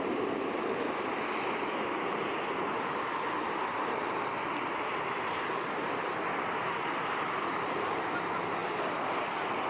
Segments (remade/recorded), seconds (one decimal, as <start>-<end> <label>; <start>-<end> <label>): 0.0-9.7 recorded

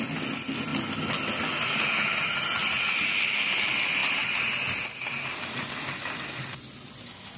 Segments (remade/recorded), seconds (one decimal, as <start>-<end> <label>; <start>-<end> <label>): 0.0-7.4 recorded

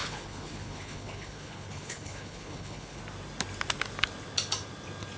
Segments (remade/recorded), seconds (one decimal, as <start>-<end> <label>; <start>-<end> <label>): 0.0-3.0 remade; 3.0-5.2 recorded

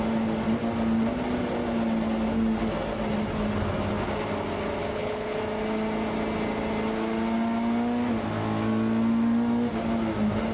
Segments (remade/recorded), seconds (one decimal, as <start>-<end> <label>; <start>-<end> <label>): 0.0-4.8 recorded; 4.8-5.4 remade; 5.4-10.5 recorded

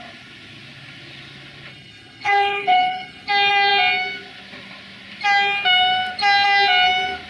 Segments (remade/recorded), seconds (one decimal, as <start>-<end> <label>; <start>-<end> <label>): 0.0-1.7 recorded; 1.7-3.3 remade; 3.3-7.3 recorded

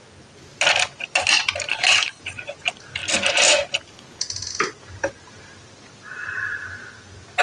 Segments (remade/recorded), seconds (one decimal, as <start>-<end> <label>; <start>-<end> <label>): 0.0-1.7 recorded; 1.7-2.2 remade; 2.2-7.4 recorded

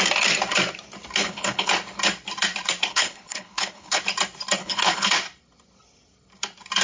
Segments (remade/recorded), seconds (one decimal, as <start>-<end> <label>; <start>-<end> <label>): 0.0-1.2 recorded; 1.2-1.7 remade; 1.7-2.9 recorded; 2.9-4.0 remade; 4.0-4.6 recorded; 4.6-5.1 remade; 5.1-6.8 recorded

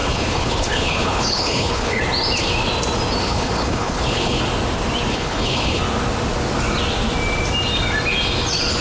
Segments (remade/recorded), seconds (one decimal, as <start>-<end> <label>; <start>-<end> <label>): 0.0-2.0 remade; 2.0-3.2 recorded; 3.2-4.4 remade; 4.4-5.1 recorded; 5.1-5.8 remade; 5.8-8.8 recorded